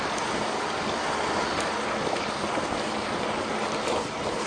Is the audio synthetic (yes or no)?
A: no